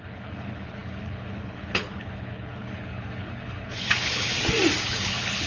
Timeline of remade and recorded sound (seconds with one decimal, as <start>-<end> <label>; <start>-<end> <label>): 0.0-4.3 remade; 4.3-4.8 recorded; 4.8-5.5 remade